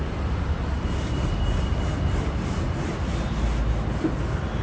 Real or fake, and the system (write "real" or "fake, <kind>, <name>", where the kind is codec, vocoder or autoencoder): real